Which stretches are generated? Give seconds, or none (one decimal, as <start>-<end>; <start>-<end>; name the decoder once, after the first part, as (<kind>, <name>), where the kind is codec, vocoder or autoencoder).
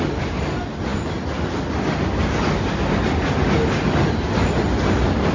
none